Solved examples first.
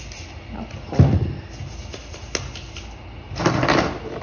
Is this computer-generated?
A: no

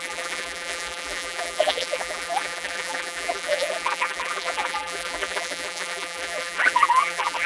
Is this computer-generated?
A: yes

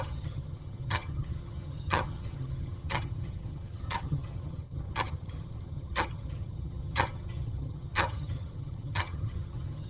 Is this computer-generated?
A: yes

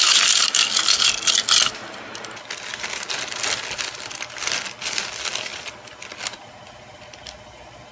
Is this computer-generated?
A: no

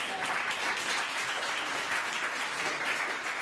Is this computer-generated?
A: no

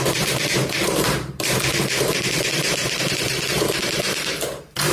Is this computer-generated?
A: yes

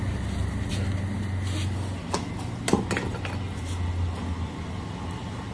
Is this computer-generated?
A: no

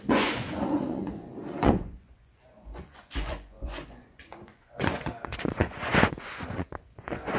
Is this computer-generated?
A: yes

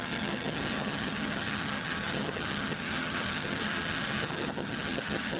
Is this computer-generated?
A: yes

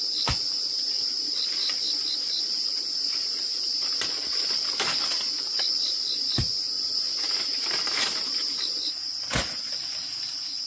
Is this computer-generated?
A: no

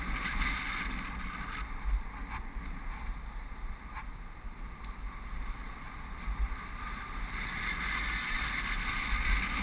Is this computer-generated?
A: no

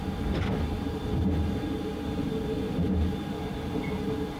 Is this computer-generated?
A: no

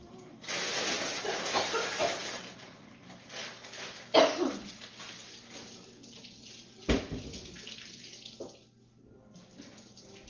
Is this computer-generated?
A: no